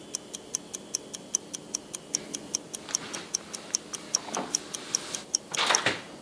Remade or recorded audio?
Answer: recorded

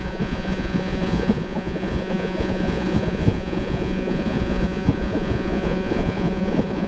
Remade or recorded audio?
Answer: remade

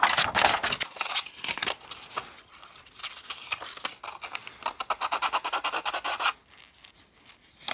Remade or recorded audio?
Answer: recorded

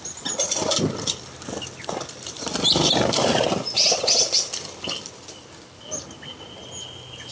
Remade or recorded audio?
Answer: recorded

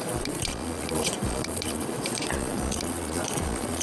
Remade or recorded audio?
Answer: remade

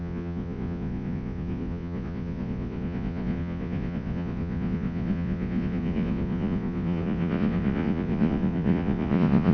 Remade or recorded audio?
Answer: remade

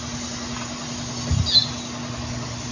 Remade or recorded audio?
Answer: recorded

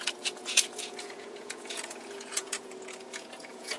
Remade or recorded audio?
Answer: remade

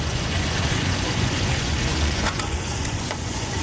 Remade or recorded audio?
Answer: remade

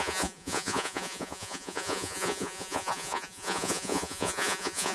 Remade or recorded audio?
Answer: remade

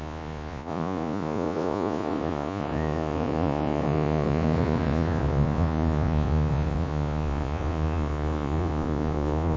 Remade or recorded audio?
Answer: remade